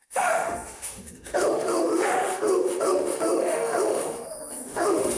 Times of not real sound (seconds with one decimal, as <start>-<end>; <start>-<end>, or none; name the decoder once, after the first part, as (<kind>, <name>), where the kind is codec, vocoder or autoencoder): 0.0-5.2 (autoencoder, DAC-VAE)